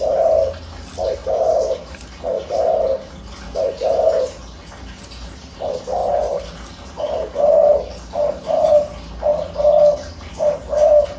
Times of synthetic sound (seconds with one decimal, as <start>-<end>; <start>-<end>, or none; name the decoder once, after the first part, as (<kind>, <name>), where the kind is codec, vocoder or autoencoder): none